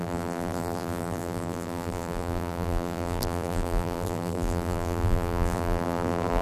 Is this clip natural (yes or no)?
no